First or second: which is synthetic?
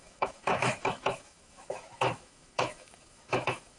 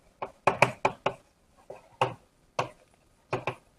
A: first